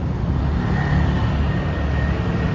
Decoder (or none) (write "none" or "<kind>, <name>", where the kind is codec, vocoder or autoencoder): none